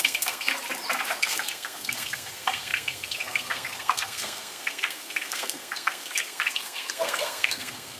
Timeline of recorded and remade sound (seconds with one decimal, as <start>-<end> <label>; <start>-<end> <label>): 0.0-0.5 remade; 0.5-1.2 recorded; 1.2-8.0 remade